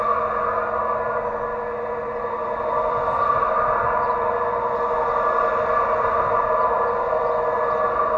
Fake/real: real